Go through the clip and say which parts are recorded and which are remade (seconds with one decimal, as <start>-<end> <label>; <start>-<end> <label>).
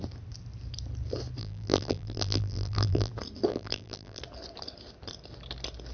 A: 0.0-1.4 recorded; 1.4-3.1 remade; 3.1-3.5 recorded; 3.5-4.2 remade; 4.2-5.9 recorded